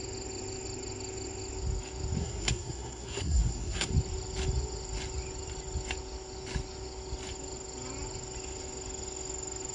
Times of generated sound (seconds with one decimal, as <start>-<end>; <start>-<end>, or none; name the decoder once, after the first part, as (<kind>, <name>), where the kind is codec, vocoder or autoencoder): 2.2-3.9 (codec, SNAC)